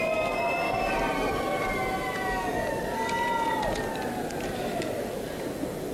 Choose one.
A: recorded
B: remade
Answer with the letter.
A